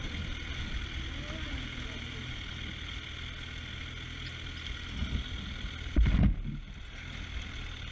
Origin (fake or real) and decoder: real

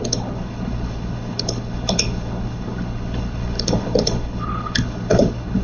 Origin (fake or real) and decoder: fake, codec, HILCodec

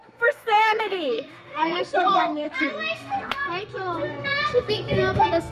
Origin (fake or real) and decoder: fake, codec, SNAC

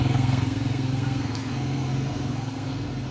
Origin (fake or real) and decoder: fake, codec, SNAC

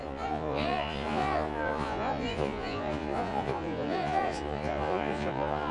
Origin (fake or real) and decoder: fake, vocoder, Vocos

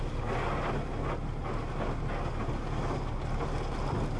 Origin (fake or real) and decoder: real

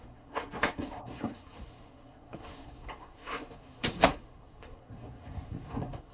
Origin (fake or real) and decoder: fake, codec, SNAC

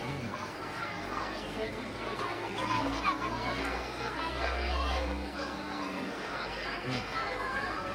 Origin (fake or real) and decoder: fake, codec, SNAC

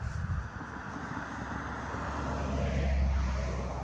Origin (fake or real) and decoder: real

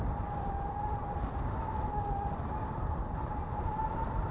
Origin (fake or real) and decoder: real